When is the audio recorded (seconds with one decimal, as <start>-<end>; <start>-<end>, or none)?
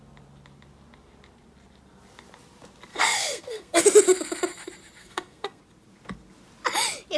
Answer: 0.0-2.9; 3.8-5.0; 5.6-7.2